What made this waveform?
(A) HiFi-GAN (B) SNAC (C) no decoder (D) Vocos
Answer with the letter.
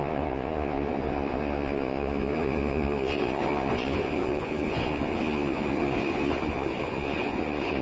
D